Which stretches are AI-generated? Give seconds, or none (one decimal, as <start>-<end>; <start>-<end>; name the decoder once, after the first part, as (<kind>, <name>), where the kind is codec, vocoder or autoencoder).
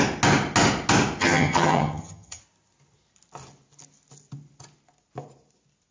1.2-2.4 (vocoder, HiFi-GAN)